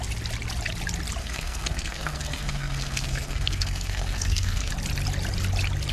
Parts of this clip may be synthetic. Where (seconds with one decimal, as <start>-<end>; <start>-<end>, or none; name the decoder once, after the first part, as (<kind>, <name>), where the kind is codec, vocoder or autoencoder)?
1.2-4.7 (codec, SNAC)